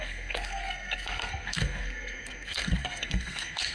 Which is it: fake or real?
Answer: fake